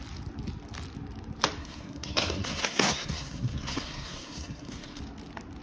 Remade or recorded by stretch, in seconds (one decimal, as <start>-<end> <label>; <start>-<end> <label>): 0.0-1.6 recorded; 1.6-5.0 remade; 5.0-5.6 recorded